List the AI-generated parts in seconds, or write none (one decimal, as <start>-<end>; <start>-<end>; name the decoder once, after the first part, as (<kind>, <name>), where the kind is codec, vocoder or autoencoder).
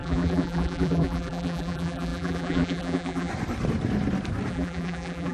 0.0-3.3 (vocoder, BigVGAN v2); 4.5-5.3